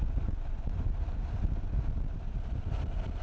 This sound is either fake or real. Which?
real